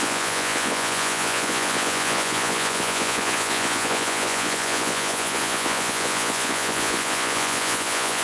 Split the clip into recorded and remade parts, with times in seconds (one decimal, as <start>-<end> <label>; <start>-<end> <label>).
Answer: 0.0-8.2 remade